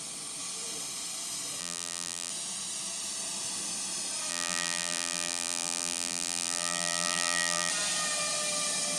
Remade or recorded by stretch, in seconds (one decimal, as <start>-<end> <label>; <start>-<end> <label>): 0.0-1.6 recorded; 1.6-2.3 remade; 2.3-4.3 recorded; 4.3-7.7 remade; 7.7-9.0 recorded